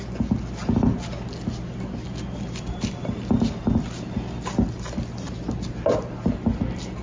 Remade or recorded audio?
recorded